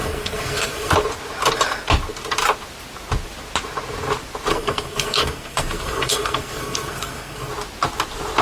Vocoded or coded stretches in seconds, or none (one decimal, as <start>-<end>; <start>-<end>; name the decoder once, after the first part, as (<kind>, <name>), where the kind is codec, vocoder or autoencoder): 0.0-0.9 (codec, SNAC); 4.5-7.5